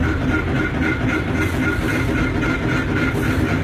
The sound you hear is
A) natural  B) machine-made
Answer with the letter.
A